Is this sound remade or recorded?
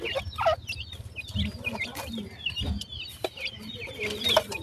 recorded